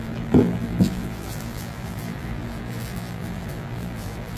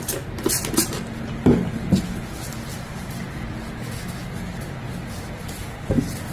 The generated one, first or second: first